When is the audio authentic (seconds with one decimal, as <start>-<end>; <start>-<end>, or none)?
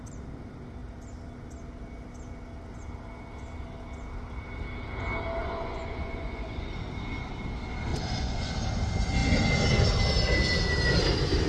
0.0-5.4; 6.8-7.9; 8.5-11.5